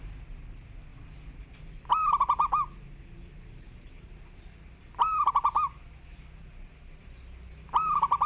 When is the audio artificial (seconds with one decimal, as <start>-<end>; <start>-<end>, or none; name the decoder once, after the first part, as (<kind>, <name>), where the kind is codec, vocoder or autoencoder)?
0.9-2.5 (vocoder, BigVGAN v2)